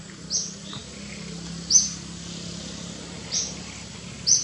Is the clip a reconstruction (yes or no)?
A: no